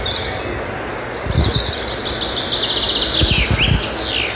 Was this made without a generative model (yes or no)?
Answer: yes